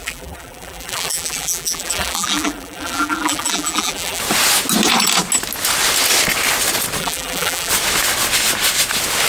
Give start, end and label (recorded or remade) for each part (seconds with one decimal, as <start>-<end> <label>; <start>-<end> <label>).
0.0-4.2 remade; 4.2-7.0 recorded; 7.0-7.7 remade; 7.7-9.3 recorded